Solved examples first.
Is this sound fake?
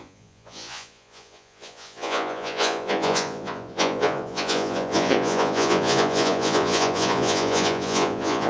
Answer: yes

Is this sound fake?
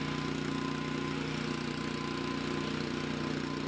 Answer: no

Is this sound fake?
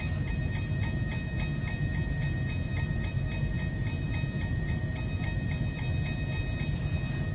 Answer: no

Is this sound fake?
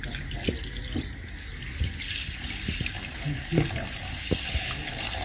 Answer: no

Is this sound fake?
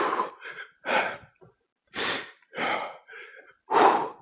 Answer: no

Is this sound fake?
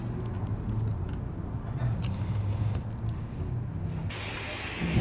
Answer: no